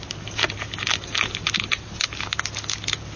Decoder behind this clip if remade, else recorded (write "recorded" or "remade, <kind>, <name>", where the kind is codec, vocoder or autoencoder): recorded